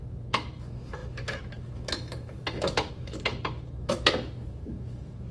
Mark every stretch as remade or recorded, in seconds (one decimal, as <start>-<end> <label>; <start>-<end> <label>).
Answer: 0.0-5.3 remade